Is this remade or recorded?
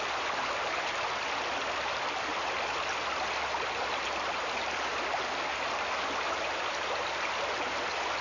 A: recorded